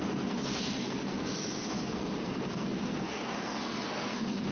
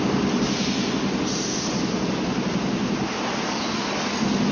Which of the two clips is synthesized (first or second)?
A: first